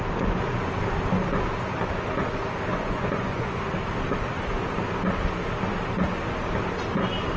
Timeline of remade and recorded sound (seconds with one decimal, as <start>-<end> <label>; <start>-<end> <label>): 0.0-2.7 recorded; 2.7-3.6 remade; 3.6-7.4 recorded